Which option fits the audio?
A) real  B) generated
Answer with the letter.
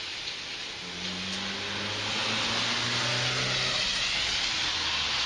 A